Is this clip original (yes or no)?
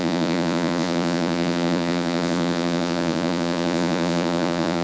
no